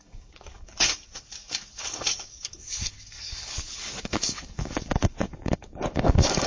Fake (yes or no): yes